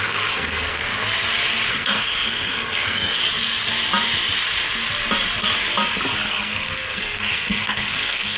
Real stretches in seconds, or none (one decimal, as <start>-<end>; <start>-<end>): 0.9-1.7; 3.2-6.3